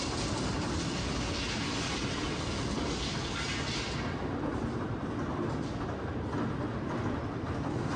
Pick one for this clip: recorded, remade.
recorded